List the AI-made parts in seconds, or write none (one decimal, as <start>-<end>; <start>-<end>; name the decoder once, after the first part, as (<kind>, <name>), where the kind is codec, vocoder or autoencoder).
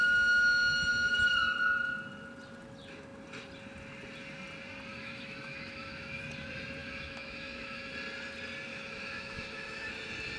4.9-6.2 (autoencoder, DAC-VAE); 6.8-7.9; 8.7-9.9